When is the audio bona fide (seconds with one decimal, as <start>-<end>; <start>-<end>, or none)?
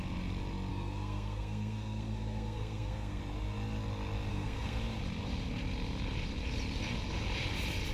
0.0-0.7; 3.2-4.3; 4.8-7.9